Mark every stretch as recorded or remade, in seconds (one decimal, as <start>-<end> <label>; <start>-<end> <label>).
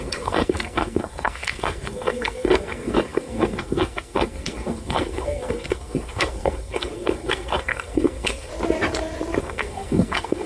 0.0-8.5 remade; 8.5-9.4 recorded; 9.4-10.5 remade